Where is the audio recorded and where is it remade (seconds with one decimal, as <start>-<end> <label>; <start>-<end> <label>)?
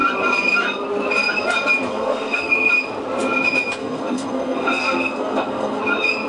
0.0-1.9 recorded; 1.9-2.7 remade; 2.7-3.8 recorded; 3.8-5.8 remade; 5.8-6.3 recorded